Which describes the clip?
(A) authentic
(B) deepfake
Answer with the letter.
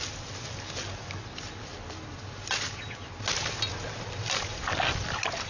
A